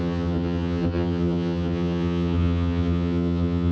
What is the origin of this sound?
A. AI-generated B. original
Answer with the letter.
A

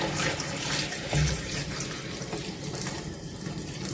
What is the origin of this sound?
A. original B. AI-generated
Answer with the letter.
B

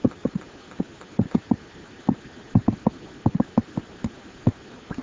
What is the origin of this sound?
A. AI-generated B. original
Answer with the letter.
B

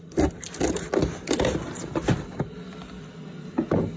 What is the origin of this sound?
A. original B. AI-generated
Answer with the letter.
A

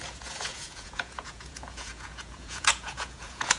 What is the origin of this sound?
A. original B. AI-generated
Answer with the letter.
B